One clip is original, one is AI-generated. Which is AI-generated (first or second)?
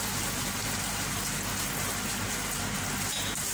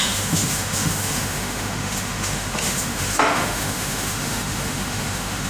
second